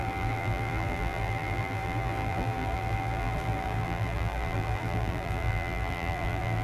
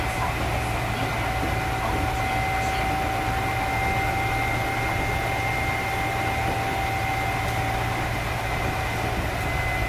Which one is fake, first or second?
first